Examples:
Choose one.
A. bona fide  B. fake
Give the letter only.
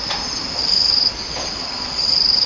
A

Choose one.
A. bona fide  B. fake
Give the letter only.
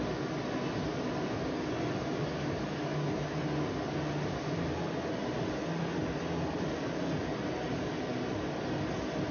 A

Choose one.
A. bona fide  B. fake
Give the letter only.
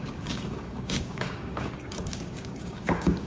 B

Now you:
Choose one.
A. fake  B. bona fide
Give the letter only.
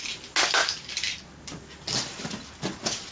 B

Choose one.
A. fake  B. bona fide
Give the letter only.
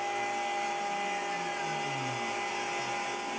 B